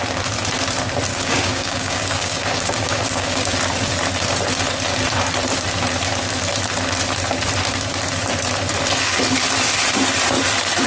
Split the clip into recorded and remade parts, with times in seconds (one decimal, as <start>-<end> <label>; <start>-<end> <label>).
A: 0.0-1.1 recorded; 1.1-3.5 remade; 3.5-10.9 recorded